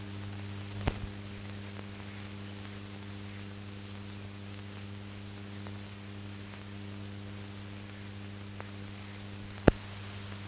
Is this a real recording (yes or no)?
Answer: yes